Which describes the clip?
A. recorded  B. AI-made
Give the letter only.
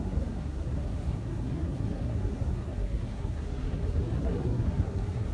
B